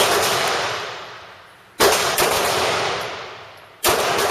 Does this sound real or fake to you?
fake